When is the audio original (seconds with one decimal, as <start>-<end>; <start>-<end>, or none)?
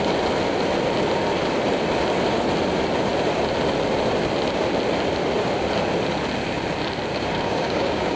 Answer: 0.0-7.1